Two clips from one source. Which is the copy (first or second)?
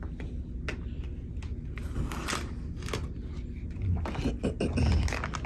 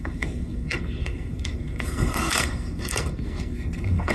second